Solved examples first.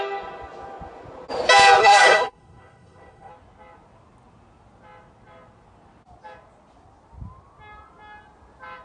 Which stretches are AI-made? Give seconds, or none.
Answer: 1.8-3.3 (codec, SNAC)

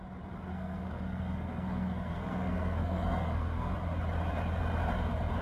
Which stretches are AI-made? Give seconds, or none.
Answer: 0.5-3.7 (codec, SNAC)

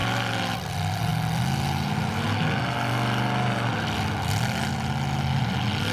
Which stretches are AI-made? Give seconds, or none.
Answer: none

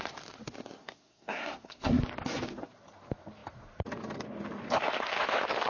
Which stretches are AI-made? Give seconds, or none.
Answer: 0.8-2.0 (codec, SNAC)

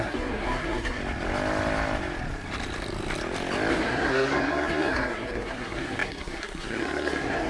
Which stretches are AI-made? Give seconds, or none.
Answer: 0.0-1.0 (codec, SNAC); 3.7-7.5

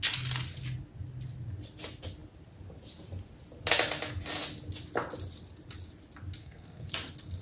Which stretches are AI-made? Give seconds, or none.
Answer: 6.4-6.9 (codec, SNAC)

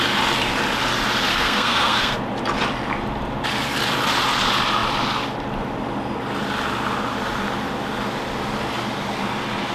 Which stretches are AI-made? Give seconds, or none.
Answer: 1.3-2.2 (codec, SNAC)